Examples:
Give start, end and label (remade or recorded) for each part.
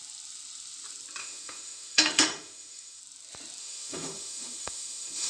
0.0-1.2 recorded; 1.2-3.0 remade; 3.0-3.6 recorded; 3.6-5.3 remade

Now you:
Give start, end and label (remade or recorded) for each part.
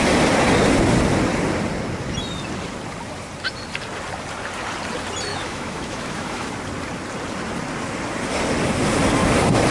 0.0-5.3 recorded; 5.3-6.5 remade; 6.5-9.7 recorded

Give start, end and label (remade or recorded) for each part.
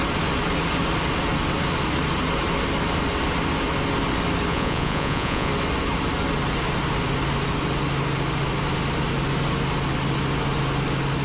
0.0-4.5 recorded; 4.5-5.5 remade; 5.5-11.2 recorded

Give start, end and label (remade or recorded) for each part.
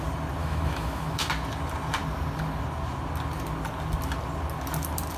0.0-0.4 recorded; 0.4-1.3 remade; 1.3-5.2 recorded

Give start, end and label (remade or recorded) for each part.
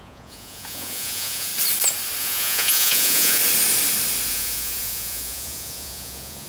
0.0-1.5 remade; 1.5-2.2 recorded; 2.2-3.4 remade; 3.4-4.3 recorded; 4.3-6.5 remade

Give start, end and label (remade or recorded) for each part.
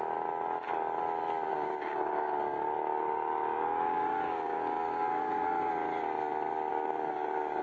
0.0-1.5 recorded; 1.5-5.7 remade; 5.7-6.7 recorded; 6.7-7.6 remade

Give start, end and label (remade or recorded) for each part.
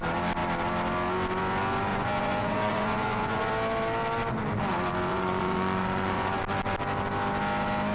0.0-1.9 recorded; 1.9-3.5 remade; 3.5-5.1 recorded; 5.1-6.4 remade; 6.4-7.9 recorded